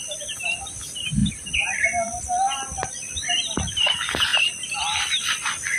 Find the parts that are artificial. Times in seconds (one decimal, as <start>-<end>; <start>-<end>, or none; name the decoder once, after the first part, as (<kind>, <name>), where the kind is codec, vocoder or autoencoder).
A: none